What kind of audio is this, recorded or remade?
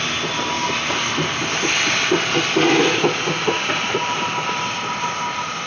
recorded